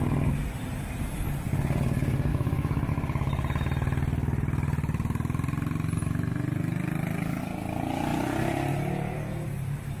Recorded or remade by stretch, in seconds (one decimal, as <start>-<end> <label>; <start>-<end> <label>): 0.0-2.3 recorded; 2.3-2.9 remade; 2.9-10.0 recorded